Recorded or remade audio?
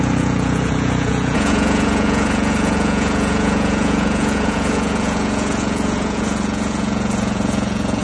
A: remade